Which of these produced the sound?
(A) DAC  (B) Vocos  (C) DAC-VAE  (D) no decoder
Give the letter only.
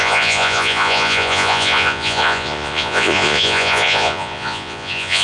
B